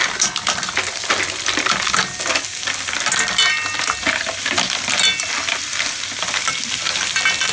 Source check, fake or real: real